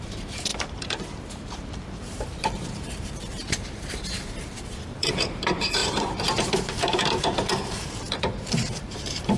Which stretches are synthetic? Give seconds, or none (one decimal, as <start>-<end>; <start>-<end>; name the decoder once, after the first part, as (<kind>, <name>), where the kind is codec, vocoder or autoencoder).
0.0-9.4 (vocoder, BigVGAN v2)